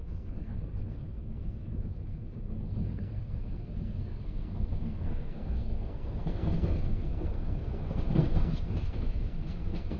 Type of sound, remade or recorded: remade